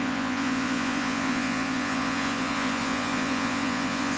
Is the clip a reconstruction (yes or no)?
yes